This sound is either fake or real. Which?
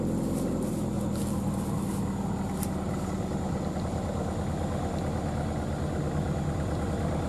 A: real